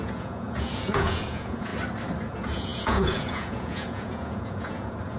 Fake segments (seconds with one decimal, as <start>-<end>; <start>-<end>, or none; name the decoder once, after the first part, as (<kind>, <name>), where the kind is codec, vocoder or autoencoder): 0.0-1.7 (vocoder, Vocos); 2.3-5.2